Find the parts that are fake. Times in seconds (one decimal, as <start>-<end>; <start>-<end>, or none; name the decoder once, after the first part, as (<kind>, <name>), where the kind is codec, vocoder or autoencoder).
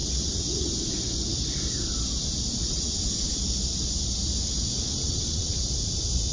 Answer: 0.0-0.7 (vocoder, WaveNeXt); 2.6-3.3; 5.0-5.6